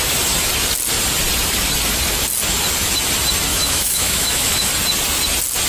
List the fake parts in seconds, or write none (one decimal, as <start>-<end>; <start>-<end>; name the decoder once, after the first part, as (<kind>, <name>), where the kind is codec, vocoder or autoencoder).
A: 3.5-4.7 (autoencoder, DAC-VAE)